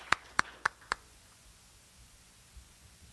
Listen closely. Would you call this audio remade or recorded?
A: remade